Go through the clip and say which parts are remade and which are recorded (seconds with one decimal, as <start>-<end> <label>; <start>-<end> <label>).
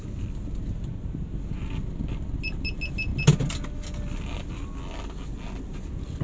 0.0-6.2 recorded